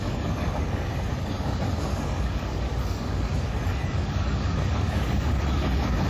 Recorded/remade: remade